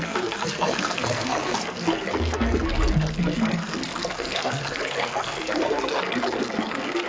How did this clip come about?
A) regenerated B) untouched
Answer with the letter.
A